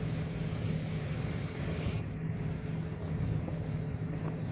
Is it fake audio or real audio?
fake